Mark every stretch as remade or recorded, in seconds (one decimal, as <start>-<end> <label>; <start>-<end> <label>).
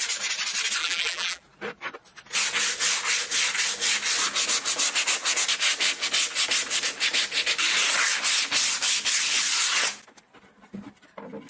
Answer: 0.0-0.8 recorded; 0.8-1.4 remade; 1.4-11.5 recorded